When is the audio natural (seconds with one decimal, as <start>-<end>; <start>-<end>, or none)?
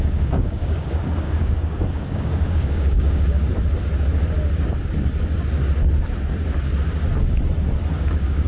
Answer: 3.5-8.0